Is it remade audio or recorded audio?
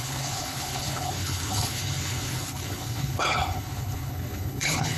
remade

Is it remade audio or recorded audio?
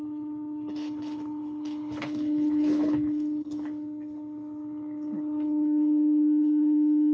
remade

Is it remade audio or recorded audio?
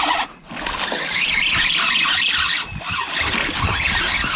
recorded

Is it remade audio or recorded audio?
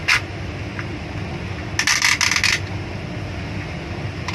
recorded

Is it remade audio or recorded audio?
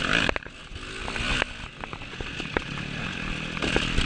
recorded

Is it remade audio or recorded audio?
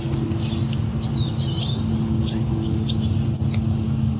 recorded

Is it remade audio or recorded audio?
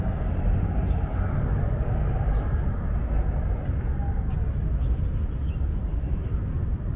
recorded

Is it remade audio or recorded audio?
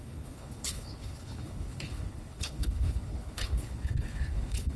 remade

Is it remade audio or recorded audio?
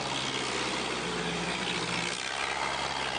recorded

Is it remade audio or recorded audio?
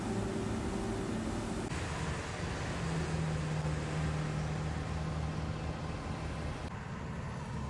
recorded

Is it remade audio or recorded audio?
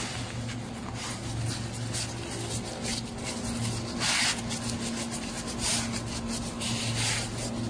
recorded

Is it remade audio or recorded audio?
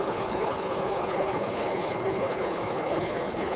remade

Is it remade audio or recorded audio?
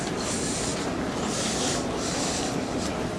recorded